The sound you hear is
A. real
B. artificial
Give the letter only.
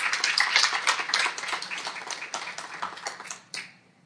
A